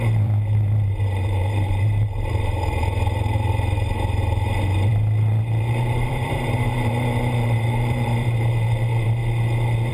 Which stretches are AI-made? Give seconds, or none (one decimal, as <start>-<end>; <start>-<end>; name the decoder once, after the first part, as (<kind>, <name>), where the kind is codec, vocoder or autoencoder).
0.0-9.2 (vocoder, BigVGAN v2)